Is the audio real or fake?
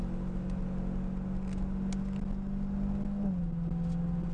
real